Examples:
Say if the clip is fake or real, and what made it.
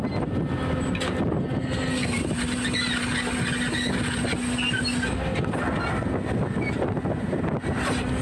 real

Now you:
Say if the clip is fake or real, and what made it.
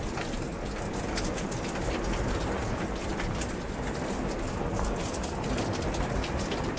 real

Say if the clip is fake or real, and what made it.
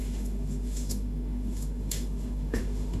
fake, autoencoder, DAC-VAE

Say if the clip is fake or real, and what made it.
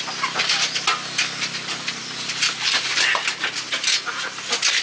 real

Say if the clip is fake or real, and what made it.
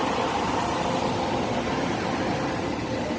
real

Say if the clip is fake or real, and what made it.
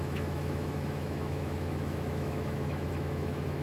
fake, autoencoder, DAC-VAE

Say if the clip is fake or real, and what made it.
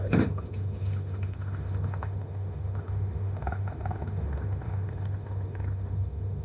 fake, autoencoder, DAC-VAE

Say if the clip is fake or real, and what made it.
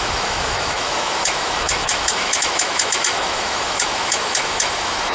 fake, autoencoder, DAC-VAE